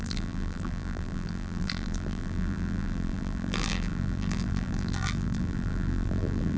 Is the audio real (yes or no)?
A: no